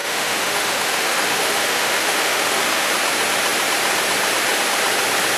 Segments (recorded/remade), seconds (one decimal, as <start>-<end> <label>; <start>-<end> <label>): 0.0-2.9 remade; 2.9-5.4 recorded